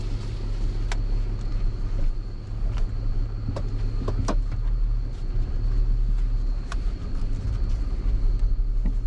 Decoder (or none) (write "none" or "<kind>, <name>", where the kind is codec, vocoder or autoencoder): none